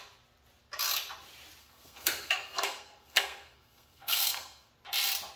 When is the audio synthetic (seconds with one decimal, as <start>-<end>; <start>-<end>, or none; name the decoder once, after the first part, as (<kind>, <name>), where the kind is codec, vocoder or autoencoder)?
1.6-4.7 (codec, SNAC)